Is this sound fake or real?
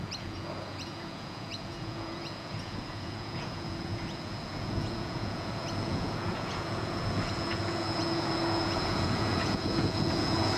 fake